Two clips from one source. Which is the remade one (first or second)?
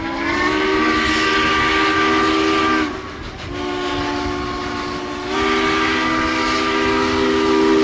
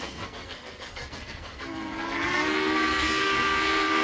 second